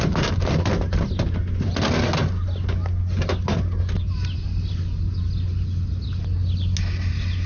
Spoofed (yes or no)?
no